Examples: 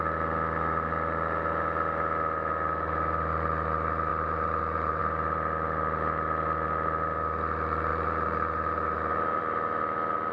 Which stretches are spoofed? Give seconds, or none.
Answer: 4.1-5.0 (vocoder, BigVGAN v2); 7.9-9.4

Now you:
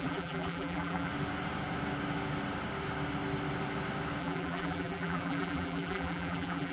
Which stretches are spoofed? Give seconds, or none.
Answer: 0.0-1.1 (vocoder, BigVGAN v2); 4.2-6.7

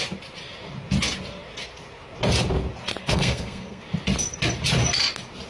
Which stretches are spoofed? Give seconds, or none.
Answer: 3.0-3.8 (codec, SNAC)

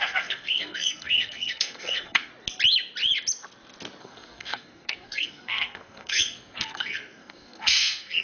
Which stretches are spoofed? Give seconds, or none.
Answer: 0.0-2.3 (codec, SNAC); 4.0-8.2

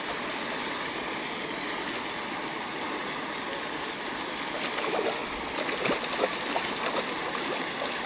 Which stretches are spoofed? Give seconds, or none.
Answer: none

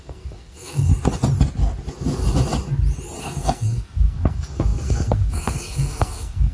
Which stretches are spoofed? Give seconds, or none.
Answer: 0.0-0.9 (codec, SNAC); 3.2-6.5

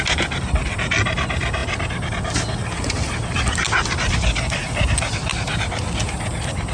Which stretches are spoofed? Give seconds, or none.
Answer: none